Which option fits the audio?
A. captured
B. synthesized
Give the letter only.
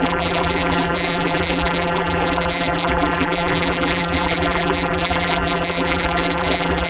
B